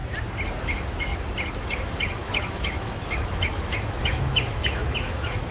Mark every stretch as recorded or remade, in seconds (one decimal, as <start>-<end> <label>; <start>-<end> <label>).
0.0-0.6 recorded; 0.6-1.1 remade; 1.1-1.6 recorded; 1.6-5.5 remade